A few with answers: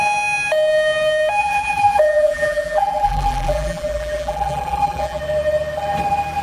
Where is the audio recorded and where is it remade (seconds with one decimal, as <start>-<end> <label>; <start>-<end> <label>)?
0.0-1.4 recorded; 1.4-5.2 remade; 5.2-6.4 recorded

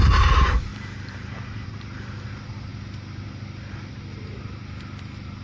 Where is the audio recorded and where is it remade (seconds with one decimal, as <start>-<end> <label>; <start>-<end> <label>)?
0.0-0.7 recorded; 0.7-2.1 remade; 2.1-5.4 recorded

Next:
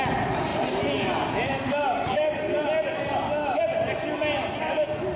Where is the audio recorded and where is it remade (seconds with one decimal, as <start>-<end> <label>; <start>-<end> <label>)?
0.0-5.2 recorded

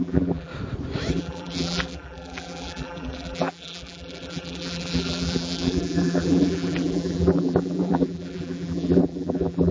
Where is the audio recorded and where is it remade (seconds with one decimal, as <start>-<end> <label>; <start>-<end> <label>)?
0.0-0.5 remade; 0.5-1.1 recorded; 1.1-9.7 remade